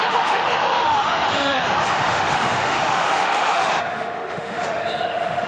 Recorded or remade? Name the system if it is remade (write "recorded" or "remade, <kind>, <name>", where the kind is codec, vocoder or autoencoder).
remade, autoencoder, DAC-VAE